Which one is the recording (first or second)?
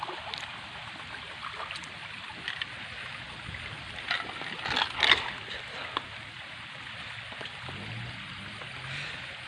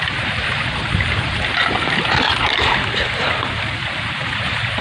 first